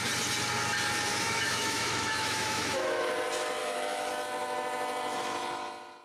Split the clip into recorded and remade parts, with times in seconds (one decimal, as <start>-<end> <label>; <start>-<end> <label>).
0.0-1.1 recorded; 1.1-3.1 remade; 3.1-3.6 recorded; 3.6-4.1 remade; 4.1-6.0 recorded